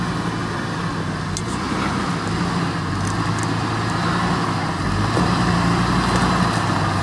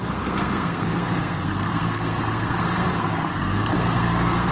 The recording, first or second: first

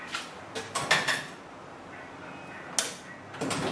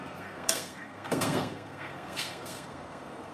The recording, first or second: first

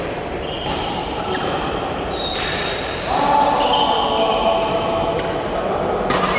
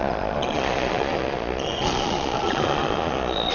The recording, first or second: first